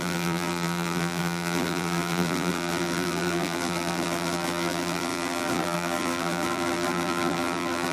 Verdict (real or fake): fake